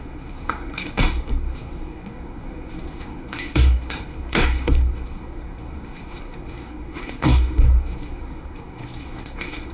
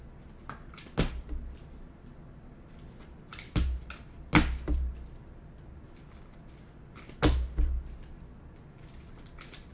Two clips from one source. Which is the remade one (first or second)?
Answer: first